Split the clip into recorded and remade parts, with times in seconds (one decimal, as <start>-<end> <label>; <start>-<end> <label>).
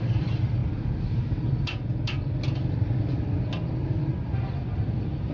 0.0-0.6 remade; 0.6-3.8 recorded; 3.8-5.3 remade